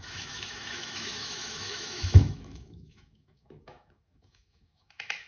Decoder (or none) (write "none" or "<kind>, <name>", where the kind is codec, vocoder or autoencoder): autoencoder, DAC-VAE